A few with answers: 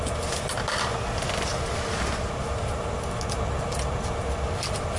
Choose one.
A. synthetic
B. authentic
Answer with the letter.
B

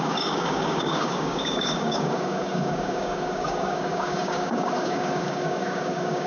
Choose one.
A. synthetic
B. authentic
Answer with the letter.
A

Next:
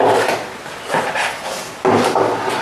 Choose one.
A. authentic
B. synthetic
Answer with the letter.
A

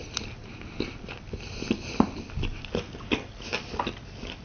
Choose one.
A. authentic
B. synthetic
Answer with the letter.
A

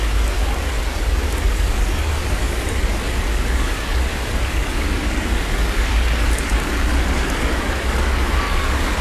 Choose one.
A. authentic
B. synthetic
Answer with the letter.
B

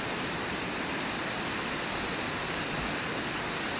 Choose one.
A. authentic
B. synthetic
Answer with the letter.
A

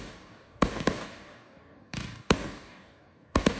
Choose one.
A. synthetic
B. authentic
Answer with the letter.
A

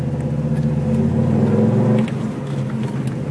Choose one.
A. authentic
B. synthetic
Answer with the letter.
A